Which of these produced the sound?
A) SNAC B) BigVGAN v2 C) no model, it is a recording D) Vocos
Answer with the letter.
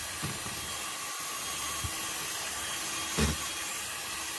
C